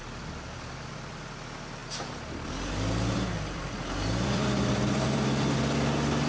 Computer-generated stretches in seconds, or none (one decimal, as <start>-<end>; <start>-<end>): 0.0-1.1; 1.8-5.6